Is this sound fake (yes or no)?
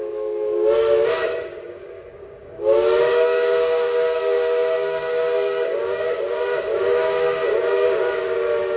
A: yes